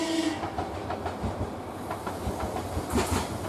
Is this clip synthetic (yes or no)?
no